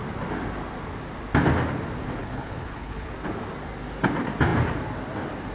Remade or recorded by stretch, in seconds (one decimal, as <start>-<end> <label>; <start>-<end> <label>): 0.0-2.2 recorded; 2.2-3.1 remade; 3.1-5.5 recorded